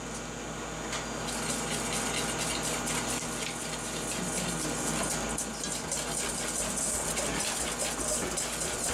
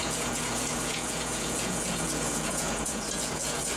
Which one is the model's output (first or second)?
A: second